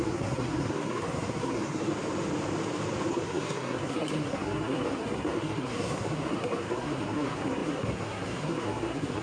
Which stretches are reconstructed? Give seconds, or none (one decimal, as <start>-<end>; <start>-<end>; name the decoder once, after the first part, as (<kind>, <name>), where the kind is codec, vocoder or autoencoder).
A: 0.0-1.9 (codec, SNAC); 3.1-9.2